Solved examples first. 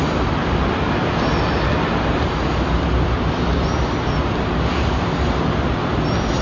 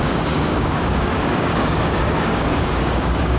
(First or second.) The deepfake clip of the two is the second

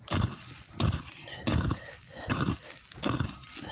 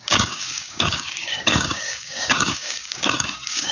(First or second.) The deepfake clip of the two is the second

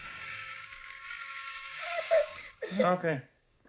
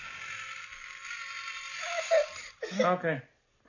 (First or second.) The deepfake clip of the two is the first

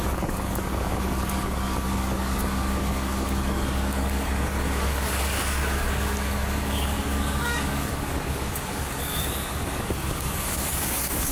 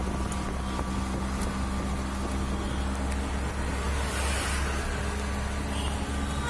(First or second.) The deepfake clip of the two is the first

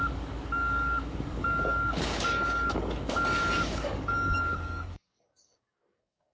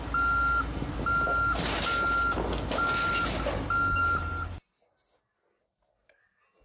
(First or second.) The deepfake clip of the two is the first